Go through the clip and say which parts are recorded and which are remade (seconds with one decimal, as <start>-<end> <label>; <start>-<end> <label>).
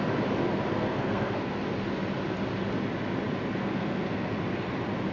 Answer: 0.0-0.7 recorded; 0.7-1.6 remade; 1.6-3.6 recorded; 3.6-4.4 remade; 4.4-5.1 recorded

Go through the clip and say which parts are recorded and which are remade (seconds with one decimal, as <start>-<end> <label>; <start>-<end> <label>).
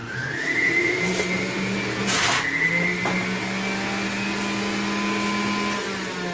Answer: 0.0-1.2 remade; 1.2-6.3 recorded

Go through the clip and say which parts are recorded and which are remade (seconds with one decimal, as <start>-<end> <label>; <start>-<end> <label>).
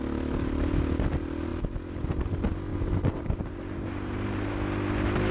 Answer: 0.0-2.7 recorded; 2.7-4.5 remade; 4.5-5.3 recorded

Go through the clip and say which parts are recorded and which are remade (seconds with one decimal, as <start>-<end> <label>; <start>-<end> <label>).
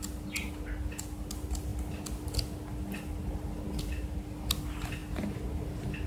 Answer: 0.0-6.1 recorded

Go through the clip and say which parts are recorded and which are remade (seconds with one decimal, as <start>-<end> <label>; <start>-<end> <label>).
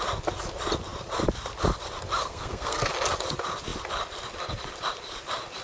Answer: 0.0-2.2 recorded; 2.2-2.9 remade; 2.9-5.6 recorded